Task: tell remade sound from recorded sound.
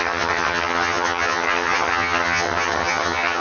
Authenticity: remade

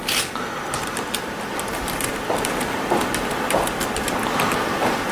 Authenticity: recorded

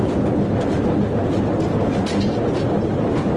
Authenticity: recorded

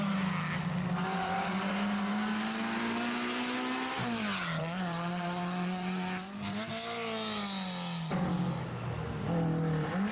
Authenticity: recorded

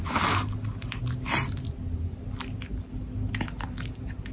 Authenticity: recorded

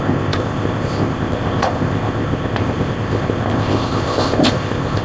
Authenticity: remade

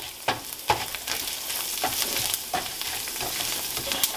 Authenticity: remade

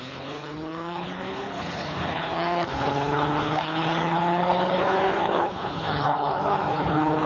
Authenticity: remade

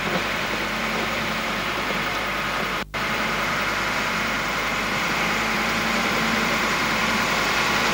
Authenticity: remade